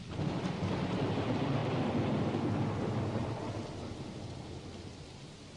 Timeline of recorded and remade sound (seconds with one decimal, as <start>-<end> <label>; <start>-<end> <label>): 0.0-5.6 recorded